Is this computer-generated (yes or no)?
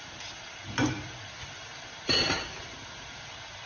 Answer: yes